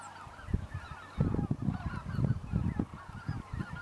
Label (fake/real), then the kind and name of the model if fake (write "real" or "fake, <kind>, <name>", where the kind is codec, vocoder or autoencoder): real